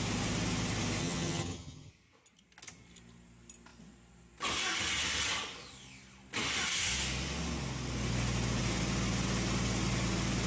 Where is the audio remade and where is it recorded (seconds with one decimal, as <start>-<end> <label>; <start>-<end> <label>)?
0.0-1.0 recorded; 1.0-1.9 remade; 1.9-10.5 recorded

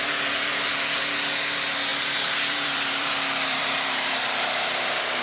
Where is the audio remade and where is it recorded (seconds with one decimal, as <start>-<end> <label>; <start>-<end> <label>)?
0.0-1.9 recorded; 1.9-5.2 remade

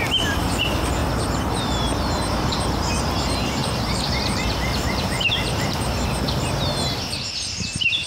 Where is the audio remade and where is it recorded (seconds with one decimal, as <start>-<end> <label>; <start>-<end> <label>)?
0.0-8.1 remade

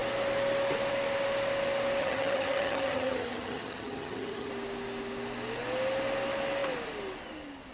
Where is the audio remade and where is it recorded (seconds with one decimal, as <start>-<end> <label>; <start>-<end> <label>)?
0.0-2.0 recorded; 2.0-4.5 remade; 4.5-7.7 recorded

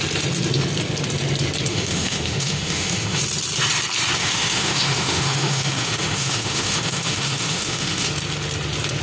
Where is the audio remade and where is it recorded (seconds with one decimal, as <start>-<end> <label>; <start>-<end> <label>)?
0.0-1.7 recorded; 1.7-3.2 remade; 3.2-4.2 recorded; 4.2-8.1 remade; 8.1-9.0 recorded

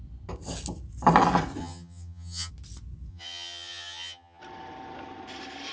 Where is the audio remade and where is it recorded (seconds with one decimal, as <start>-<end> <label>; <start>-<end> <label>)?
0.0-1.6 recorded; 1.6-2.5 remade; 2.5-3.1 recorded; 3.1-4.4 remade; 4.4-5.7 recorded